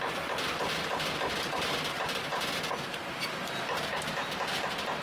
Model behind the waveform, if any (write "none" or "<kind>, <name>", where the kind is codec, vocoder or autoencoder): none